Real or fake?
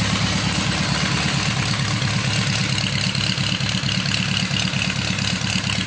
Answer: real